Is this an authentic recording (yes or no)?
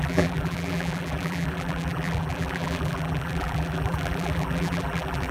no